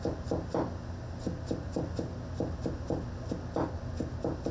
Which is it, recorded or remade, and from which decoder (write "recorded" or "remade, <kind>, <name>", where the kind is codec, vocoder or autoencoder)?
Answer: recorded